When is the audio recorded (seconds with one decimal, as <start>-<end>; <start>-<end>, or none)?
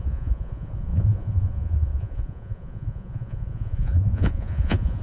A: none